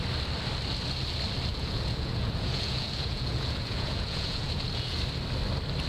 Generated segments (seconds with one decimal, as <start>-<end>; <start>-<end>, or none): 1.5-5.0